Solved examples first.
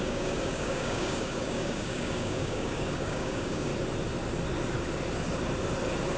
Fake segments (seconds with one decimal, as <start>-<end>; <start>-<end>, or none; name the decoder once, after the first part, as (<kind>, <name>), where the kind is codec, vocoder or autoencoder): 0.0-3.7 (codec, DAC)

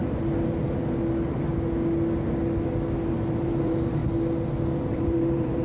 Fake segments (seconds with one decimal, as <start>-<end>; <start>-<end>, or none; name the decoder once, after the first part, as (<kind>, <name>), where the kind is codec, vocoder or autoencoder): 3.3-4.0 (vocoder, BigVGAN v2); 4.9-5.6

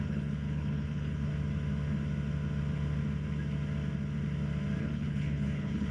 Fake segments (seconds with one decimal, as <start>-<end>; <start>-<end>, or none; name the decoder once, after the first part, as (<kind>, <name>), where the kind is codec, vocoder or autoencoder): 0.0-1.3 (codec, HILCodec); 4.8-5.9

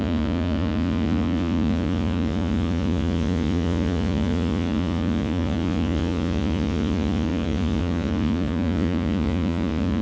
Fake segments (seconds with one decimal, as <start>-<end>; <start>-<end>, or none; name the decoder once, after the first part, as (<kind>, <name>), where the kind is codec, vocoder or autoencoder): 0.0-10.0 (vocoder, Vocos)

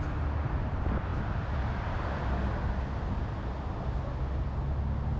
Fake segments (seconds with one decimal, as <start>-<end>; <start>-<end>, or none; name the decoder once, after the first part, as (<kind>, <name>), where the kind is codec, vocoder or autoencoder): none

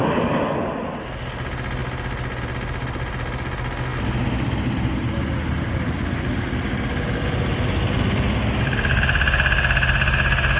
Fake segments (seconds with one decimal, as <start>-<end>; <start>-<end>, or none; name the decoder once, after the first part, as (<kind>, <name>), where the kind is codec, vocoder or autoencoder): none

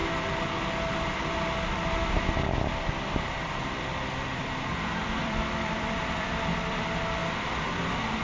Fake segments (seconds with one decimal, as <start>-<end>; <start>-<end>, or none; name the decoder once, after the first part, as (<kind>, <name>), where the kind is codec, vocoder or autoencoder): 3.0-7.2 (vocoder, BigVGAN v2)

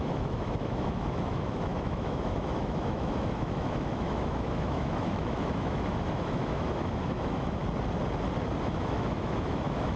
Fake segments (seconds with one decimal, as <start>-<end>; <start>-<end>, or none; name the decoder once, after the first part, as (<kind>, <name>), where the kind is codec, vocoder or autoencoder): 0.0-7.6 (autoencoder, DAC-VAE); 8.6-10.0